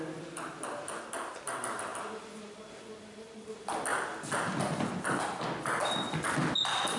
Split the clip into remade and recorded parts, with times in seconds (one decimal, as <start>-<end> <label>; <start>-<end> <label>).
0.0-7.0 recorded